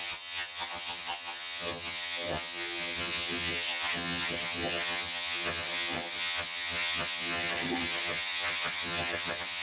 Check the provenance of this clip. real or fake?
fake